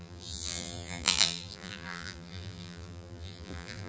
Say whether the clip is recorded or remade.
remade